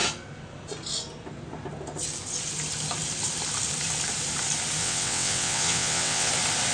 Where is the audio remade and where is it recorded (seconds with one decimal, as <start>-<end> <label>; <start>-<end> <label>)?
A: 0.0-4.8 recorded; 4.8-6.3 remade; 6.3-6.7 recorded